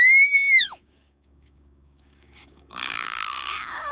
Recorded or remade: remade